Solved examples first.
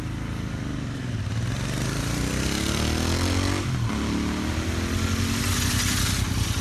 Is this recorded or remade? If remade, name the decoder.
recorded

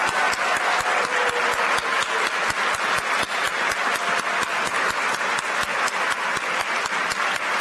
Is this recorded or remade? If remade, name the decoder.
recorded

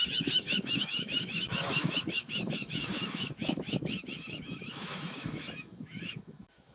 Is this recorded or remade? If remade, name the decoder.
remade, autoencoder, DAC-VAE